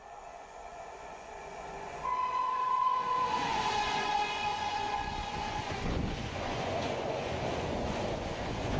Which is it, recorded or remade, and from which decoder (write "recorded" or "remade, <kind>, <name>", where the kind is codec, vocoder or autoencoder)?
remade, vocoder, Vocos